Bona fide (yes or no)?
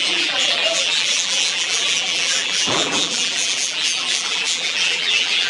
no